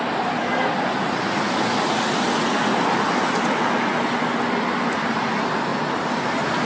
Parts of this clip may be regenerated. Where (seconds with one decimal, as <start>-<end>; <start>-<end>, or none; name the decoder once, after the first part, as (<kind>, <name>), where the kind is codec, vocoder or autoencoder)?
none